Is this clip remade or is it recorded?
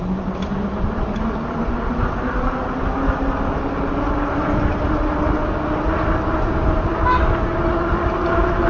recorded